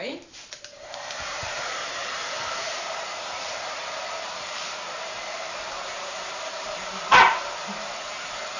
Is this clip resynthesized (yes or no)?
yes